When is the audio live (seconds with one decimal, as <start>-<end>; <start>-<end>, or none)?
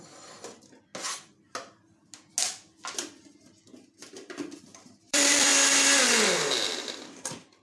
0.9-4.6; 5.5-7.1